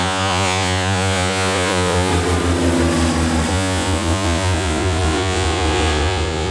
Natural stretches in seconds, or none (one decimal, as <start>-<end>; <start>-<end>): 2.1-3.5

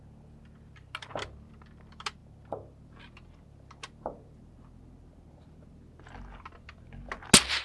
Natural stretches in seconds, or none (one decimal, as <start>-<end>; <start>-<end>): 0.0-7.6